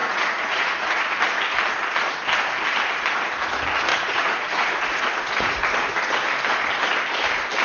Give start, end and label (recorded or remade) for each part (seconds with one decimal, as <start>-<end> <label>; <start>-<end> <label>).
0.0-1.2 remade; 1.2-3.9 recorded; 3.9-5.6 remade; 5.6-7.6 recorded